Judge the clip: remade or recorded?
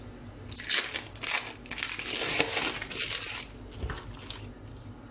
recorded